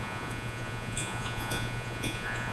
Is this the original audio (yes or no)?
no